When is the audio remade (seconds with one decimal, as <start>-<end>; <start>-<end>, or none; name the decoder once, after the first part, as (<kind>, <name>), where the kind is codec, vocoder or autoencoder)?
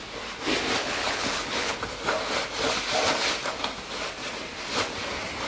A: 0.8-1.8 (codec, HILCodec)